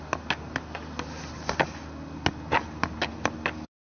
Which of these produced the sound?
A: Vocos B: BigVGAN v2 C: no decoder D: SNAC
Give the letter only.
C